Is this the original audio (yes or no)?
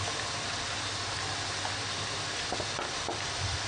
yes